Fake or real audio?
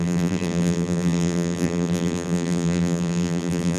fake